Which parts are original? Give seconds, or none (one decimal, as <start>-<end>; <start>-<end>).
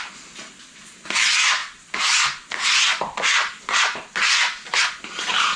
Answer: 0.0-5.6